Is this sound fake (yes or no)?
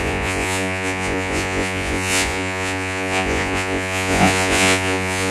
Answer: yes